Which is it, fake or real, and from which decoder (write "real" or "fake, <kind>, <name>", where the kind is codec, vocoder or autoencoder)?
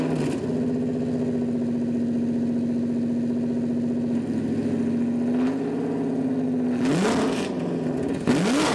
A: real